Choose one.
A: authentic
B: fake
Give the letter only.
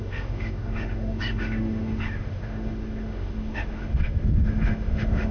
B